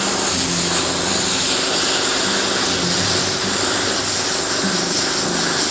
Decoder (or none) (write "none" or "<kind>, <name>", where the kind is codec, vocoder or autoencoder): none